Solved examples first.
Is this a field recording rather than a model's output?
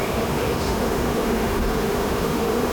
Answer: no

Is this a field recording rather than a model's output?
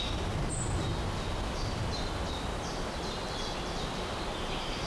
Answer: yes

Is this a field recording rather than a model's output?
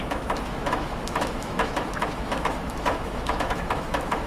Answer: no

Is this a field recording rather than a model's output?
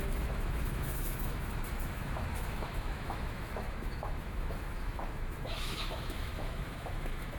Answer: no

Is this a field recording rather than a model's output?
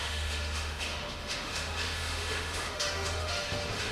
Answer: no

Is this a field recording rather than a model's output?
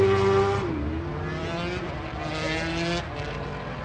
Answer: yes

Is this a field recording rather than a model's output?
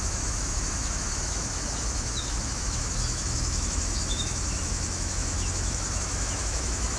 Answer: no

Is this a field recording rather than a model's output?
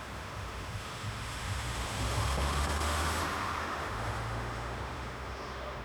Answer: no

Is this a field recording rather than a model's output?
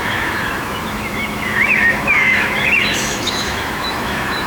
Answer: no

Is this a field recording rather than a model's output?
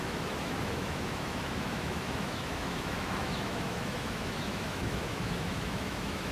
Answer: no